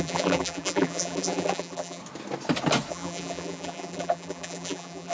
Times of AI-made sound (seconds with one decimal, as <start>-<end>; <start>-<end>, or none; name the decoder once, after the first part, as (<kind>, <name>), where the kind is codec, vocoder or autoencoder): 0.0-2.0 (vocoder, BigVGAN v2); 2.9-5.1